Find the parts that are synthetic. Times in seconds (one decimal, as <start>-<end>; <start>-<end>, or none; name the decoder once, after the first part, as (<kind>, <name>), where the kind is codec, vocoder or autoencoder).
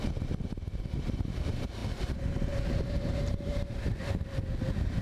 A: 0.0-5.0 (vocoder, BigVGAN v2)